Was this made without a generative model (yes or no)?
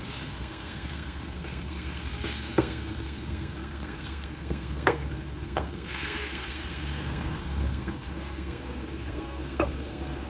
no